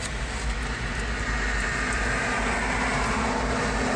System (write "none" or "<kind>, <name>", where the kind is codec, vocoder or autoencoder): none